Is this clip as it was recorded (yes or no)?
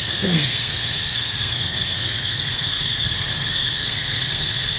no